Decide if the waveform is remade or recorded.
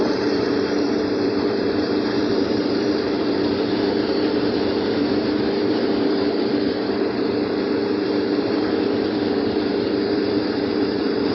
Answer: remade